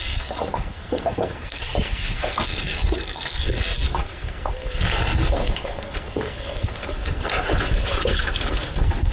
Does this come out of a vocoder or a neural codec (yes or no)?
yes